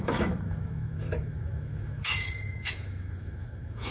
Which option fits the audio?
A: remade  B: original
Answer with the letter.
A